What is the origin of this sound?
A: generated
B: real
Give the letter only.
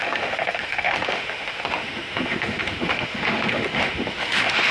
A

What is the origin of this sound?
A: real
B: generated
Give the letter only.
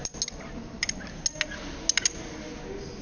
A